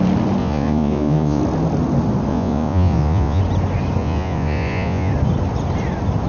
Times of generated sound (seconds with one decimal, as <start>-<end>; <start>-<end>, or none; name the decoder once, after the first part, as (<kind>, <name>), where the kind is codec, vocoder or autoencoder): 0.4-1.4 (vocoder, Vocos); 2.3-3.4; 4.0-5.1